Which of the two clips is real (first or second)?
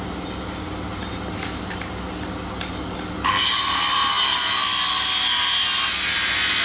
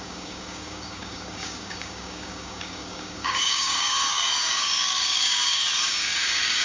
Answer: first